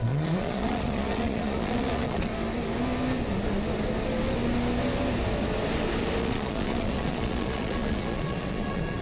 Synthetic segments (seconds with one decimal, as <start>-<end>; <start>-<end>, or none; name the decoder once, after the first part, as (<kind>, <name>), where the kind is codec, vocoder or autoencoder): 0.0-2.3 (vocoder, Vocos); 6.2-9.0